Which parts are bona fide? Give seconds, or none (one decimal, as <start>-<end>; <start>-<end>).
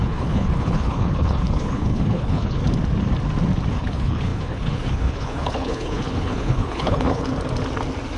2.6-3.7; 7.3-8.2